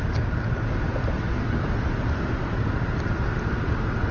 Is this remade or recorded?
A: recorded